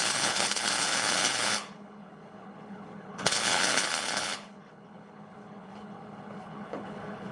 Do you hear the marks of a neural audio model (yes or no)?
yes